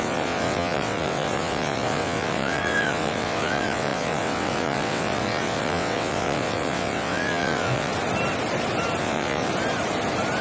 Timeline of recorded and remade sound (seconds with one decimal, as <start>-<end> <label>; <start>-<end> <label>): 0.0-7.9 remade; 7.9-9.0 recorded; 9.0-9.5 remade; 9.5-10.4 recorded